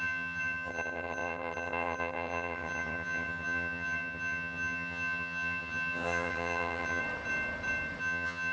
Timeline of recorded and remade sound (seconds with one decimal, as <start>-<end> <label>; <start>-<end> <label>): 0.0-7.0 remade; 7.0-8.0 recorded; 8.0-8.5 remade